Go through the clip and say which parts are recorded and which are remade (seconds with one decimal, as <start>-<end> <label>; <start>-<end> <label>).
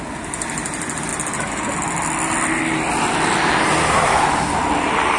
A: 0.0-5.2 recorded